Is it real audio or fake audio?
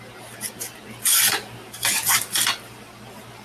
real